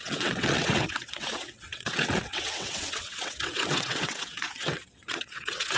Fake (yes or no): yes